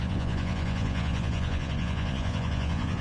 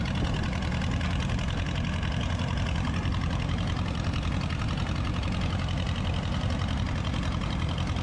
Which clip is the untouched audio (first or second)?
second